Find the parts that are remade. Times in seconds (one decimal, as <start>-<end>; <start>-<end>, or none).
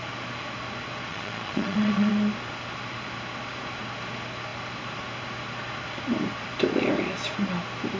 1.1-2.1